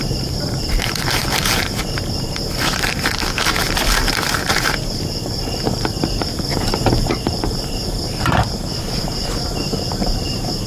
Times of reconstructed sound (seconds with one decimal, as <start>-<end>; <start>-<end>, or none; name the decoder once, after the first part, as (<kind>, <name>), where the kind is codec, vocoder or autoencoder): 0.0-10.7 (vocoder, BigVGAN v2)